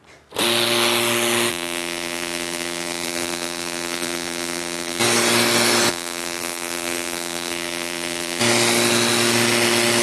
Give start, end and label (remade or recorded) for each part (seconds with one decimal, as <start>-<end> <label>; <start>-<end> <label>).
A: 0.0-1.5 recorded; 1.5-5.0 remade; 5.0-5.9 recorded; 5.9-8.4 remade; 8.4-10.0 recorded